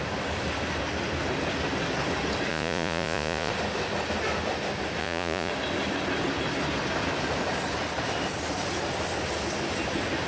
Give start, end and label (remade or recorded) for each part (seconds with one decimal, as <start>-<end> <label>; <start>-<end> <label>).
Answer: 0.0-2.5 recorded; 2.5-3.5 remade; 3.5-5.0 recorded; 5.0-5.5 remade; 5.5-10.3 recorded